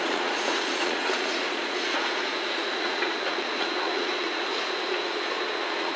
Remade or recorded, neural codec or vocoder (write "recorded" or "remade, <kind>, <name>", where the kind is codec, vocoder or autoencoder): remade, vocoder, Vocos